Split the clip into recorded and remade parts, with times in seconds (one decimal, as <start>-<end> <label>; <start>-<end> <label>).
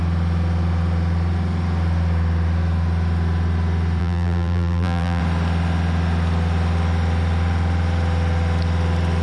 0.0-4.0 recorded; 4.0-5.2 remade; 5.2-9.2 recorded